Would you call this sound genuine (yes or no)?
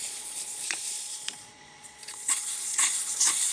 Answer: no